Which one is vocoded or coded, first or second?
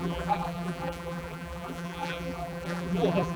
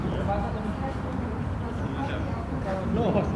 first